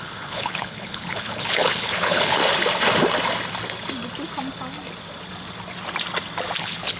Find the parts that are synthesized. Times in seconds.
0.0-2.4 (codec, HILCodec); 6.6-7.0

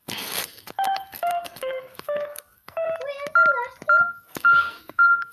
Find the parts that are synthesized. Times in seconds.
0.0-2.9 (codec, SNAC); 4.0-5.3

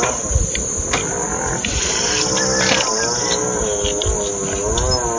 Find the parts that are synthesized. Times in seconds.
none